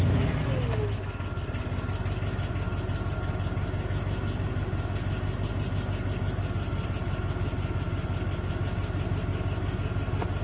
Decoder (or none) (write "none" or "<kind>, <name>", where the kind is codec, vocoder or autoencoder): none